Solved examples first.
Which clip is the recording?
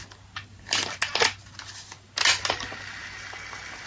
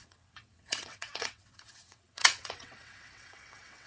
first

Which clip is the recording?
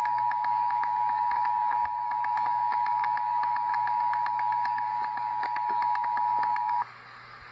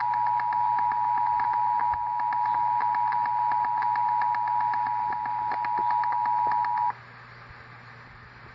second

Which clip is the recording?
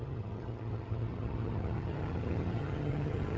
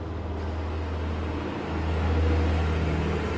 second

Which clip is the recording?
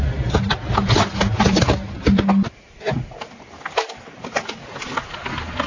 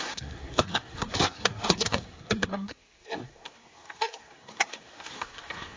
first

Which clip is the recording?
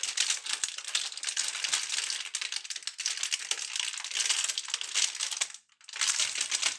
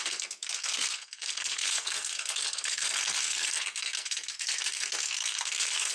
first